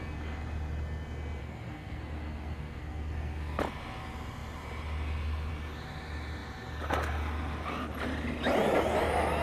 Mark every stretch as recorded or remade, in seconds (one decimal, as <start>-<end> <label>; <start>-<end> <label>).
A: 0.0-1.4 recorded; 1.4-3.6 remade; 3.6-9.4 recorded